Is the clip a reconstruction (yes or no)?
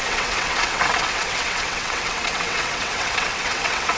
yes